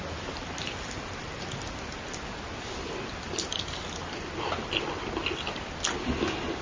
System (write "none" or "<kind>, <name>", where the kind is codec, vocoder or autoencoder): none